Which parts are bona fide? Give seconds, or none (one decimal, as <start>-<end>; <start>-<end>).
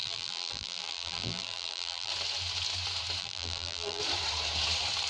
2.1-3.2; 4.0-5.1